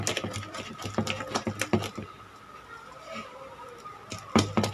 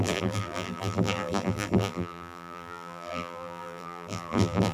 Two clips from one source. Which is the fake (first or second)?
second